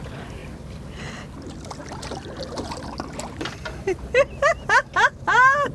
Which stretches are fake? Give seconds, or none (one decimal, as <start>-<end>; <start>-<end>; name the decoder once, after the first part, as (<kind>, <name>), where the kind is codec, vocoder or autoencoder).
none